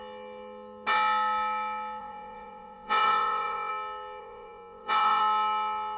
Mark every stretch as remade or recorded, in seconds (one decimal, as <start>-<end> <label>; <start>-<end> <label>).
0.0-2.0 recorded; 2.0-3.7 remade; 3.7-4.2 recorded; 4.2-5.2 remade; 5.2-6.0 recorded